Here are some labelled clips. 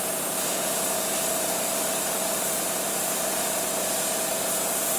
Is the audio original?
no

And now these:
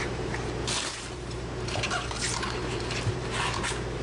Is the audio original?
no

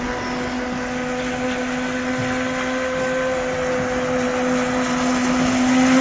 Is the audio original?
yes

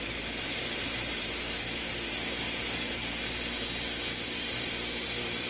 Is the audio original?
no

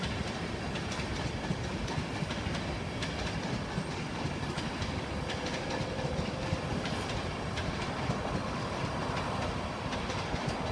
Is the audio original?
no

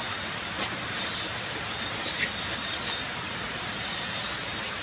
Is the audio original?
no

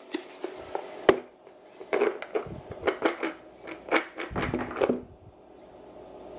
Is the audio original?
no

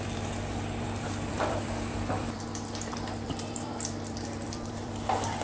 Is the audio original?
no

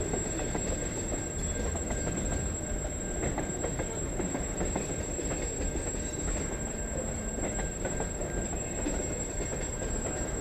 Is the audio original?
no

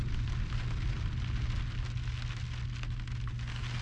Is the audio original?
yes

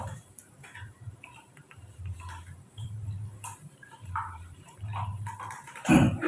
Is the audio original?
no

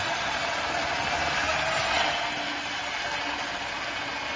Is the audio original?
yes